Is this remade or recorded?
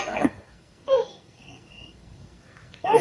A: remade